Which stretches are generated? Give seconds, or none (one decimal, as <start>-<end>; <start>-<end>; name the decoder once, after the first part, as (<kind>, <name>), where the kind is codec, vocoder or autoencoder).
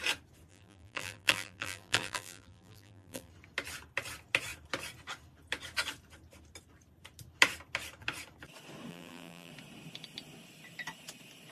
0.5-3.3 (vocoder, BigVGAN v2); 8.9-9.5